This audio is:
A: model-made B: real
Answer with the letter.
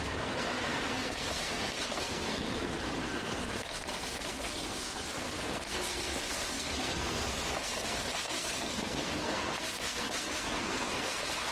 A